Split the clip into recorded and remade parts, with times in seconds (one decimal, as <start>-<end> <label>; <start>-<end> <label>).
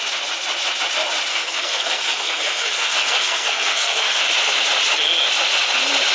0.0-1.3 recorded; 1.3-4.2 remade; 4.2-6.1 recorded